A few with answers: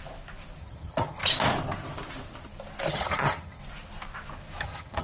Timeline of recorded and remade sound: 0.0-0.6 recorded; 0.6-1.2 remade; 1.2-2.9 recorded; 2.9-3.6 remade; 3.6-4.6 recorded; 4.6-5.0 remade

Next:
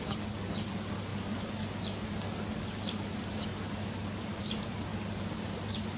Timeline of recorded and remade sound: 0.0-6.0 recorded

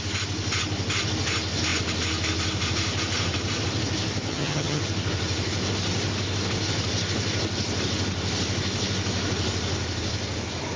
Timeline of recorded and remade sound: 0.0-4.3 recorded; 4.3-4.8 remade; 4.8-10.8 recorded